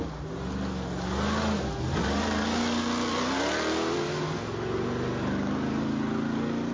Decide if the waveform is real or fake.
real